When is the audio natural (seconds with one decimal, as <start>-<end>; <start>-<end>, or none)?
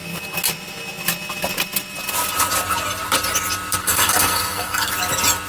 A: 0.0-3.8; 4.9-5.5